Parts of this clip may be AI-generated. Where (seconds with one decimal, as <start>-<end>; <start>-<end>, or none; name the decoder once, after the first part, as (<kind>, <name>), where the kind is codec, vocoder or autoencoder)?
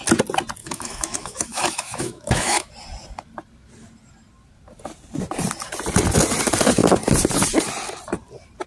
0.6-2.7 (autoencoder, DAC-VAE)